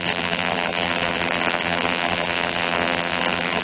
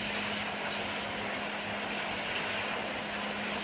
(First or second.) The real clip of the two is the second